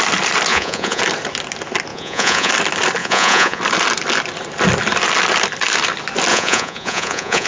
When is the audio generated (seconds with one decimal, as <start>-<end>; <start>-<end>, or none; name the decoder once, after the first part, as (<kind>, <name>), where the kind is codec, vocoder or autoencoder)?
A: 0.5-1.0 (vocoder, Vocos); 1.9-2.5; 3.0-3.6; 6.3-7.5